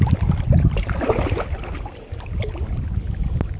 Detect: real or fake real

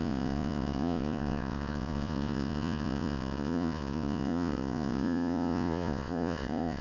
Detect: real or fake fake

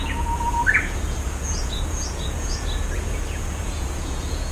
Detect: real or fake fake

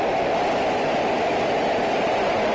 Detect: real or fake real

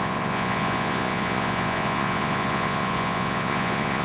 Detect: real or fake fake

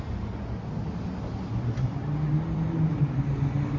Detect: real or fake real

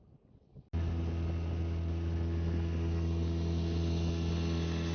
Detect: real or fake real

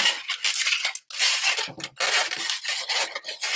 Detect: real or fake real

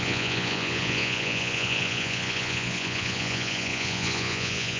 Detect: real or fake fake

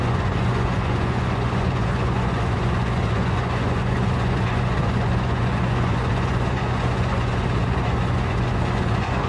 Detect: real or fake fake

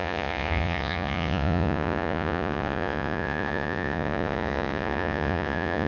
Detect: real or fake fake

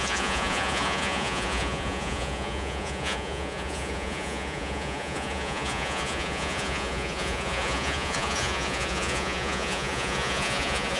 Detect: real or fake fake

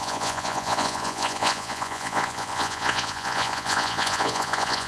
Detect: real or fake fake